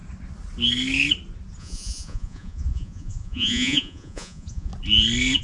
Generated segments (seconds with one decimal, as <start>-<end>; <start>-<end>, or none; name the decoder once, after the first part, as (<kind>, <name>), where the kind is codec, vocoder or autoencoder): 1.6-4.7 (vocoder, Vocos)